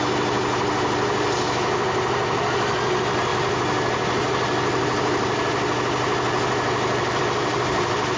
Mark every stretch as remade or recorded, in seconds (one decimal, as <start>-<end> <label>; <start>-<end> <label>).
0.0-8.2 recorded